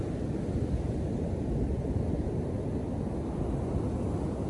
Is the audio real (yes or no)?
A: yes